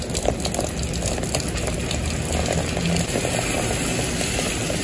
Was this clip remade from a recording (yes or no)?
no